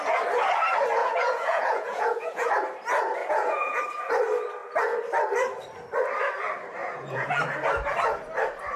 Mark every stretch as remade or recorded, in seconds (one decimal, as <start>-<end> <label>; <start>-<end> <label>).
0.0-1.0 recorded; 1.0-2.5 remade; 2.5-3.2 recorded; 3.2-3.8 remade; 3.8-6.8 recorded; 6.8-7.4 remade; 7.4-8.8 recorded